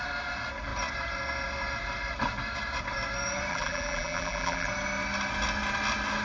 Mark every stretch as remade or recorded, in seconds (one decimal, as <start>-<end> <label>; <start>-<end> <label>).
0.0-3.5 recorded; 3.5-4.7 remade; 4.7-6.2 recorded